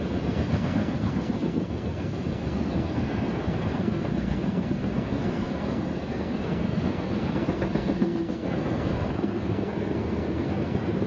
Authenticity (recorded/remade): remade